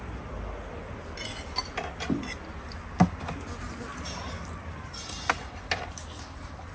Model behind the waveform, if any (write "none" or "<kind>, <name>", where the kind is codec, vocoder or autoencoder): none